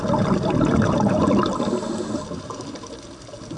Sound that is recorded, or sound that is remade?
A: recorded